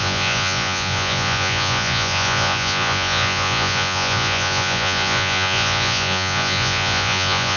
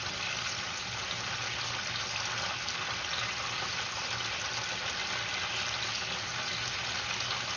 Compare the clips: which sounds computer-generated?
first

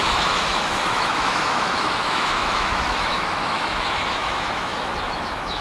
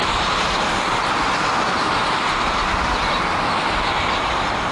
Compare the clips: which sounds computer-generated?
first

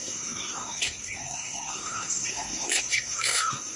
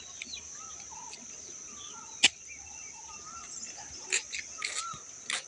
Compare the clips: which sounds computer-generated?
first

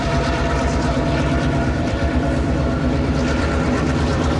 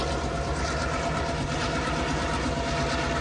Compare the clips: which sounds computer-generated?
first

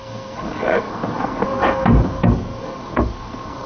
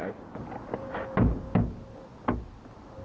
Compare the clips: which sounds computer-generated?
first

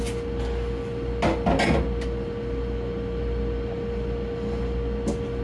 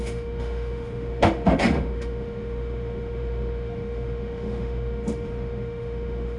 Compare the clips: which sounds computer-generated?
second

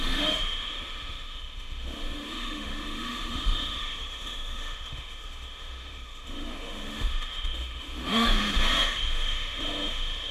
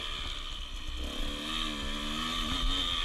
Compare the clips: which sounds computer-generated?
first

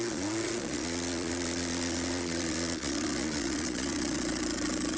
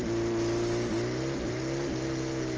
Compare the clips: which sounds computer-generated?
first